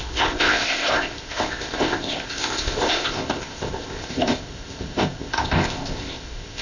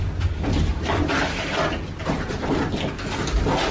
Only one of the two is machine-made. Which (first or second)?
first